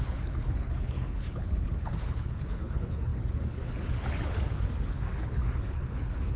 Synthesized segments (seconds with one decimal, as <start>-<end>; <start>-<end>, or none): 0.0-6.4